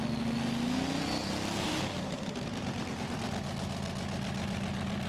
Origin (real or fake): real